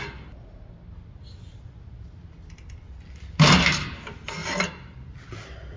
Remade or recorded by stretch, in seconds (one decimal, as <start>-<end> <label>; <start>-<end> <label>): 0.0-5.8 recorded